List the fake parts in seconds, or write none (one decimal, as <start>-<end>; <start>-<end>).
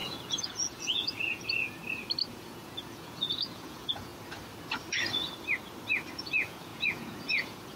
0.0-1.8; 2.3-4.1; 6.1-7.8